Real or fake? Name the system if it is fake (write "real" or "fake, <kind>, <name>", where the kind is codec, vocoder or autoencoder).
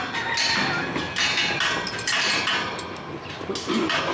real